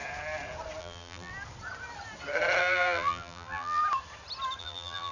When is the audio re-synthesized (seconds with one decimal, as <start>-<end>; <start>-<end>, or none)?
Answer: 0.8-1.3; 2.6-3.8; 4.6-5.1